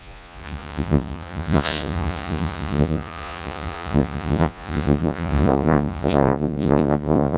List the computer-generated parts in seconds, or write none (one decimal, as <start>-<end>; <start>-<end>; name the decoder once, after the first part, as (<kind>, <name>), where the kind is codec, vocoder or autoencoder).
0.0-7.4 (vocoder, Vocos)